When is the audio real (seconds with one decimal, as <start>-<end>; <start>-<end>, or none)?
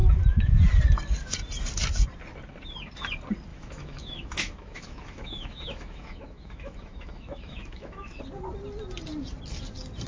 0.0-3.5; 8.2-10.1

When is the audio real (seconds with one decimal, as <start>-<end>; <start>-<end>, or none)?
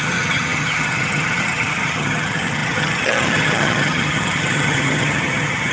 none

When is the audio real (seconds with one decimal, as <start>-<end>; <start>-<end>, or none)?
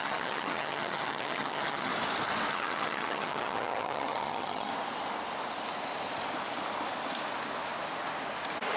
1.9-2.5; 4.7-8.8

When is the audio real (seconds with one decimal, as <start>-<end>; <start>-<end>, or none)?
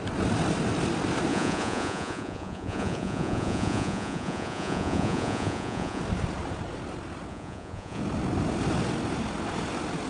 0.0-1.3; 6.0-7.3; 8.0-10.1